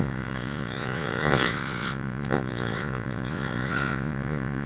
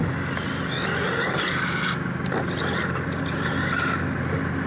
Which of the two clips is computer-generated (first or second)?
first